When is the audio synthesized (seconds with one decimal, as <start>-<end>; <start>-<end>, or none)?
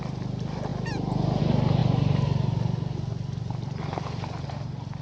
none